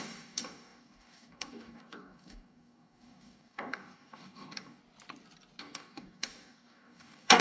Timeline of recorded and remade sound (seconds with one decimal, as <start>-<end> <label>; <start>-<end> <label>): 0.0-4.8 remade; 4.8-5.6 recorded; 5.6-7.4 remade

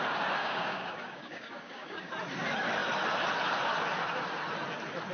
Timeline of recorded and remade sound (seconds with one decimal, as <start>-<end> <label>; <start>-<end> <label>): 0.0-0.4 recorded; 0.4-2.1 remade; 2.1-5.1 recorded

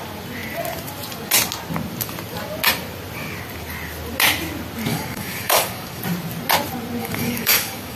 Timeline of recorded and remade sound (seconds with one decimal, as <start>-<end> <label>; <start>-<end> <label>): 0.0-4.9 recorded; 4.9-6.0 remade; 6.0-7.0 recorded; 7.0-8.0 remade